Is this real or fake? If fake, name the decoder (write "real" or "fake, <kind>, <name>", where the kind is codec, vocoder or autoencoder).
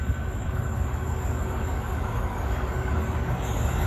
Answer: fake, codec, DAC